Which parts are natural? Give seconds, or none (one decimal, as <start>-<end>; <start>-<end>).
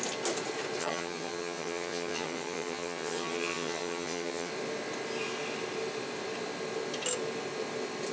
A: 0.0-0.8; 4.5-8.1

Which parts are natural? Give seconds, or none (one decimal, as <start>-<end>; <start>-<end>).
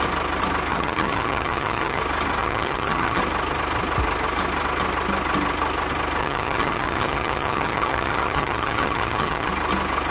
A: 0.0-0.7; 2.0-2.4; 3.2-6.2; 9.5-10.1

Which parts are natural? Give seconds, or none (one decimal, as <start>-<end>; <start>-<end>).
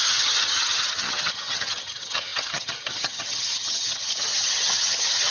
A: none